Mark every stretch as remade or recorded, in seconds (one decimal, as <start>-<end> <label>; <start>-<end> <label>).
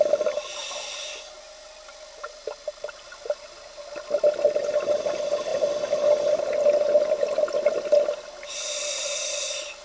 0.0-9.8 recorded